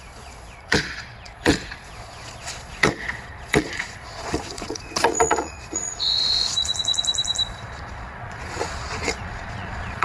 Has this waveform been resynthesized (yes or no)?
yes